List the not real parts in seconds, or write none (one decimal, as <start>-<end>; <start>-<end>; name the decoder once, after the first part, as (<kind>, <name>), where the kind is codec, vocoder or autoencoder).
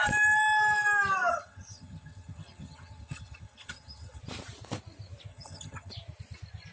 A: 1.3-4.2 (vocoder, HiFi-GAN); 5.3-5.9